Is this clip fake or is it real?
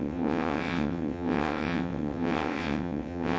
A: fake